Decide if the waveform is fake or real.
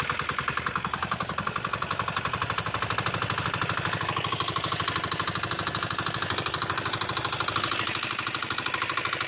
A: real